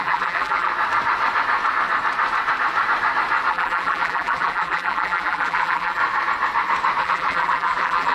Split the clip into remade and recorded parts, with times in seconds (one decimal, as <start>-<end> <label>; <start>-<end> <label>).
0.0-0.7 remade; 0.7-3.5 recorded; 3.5-6.0 remade; 6.0-7.0 recorded; 7.0-8.1 remade